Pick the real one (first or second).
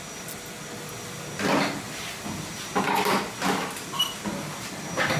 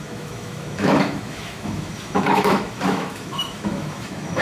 first